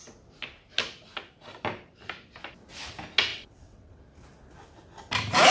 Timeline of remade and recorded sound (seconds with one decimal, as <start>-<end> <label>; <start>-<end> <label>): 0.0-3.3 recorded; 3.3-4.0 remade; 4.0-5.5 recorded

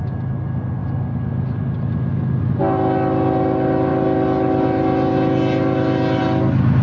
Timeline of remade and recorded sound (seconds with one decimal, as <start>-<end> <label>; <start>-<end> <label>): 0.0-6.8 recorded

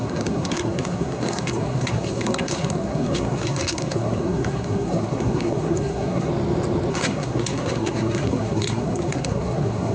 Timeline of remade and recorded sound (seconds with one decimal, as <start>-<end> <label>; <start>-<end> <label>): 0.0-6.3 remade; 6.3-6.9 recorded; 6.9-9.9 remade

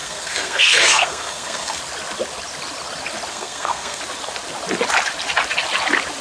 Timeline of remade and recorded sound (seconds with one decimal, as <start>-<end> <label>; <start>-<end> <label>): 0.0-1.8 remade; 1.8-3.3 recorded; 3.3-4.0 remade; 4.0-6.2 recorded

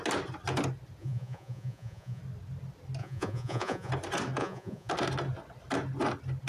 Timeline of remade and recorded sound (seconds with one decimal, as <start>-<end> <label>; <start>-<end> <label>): 0.0-1.0 recorded; 1.0-2.2 remade; 2.2-3.0 recorded; 3.0-3.9 remade; 3.9-4.4 recorded; 4.4-4.9 remade; 4.9-6.5 recorded

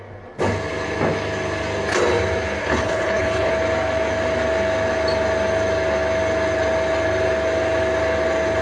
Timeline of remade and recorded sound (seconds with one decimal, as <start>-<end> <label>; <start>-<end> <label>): 0.0-2.6 recorded; 2.6-3.5 remade; 3.5-8.6 recorded